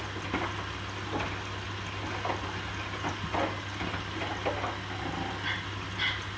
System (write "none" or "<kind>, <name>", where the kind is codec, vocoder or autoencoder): none